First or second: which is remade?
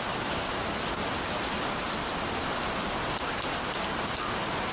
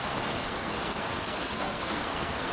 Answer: second